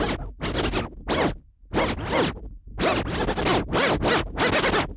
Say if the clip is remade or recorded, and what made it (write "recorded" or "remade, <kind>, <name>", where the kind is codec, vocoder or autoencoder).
recorded